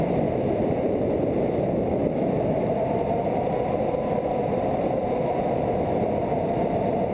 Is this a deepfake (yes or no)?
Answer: no